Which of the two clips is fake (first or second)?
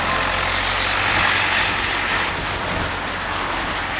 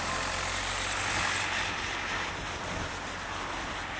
second